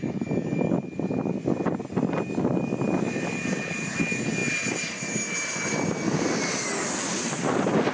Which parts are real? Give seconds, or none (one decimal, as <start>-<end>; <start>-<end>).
0.0-7.9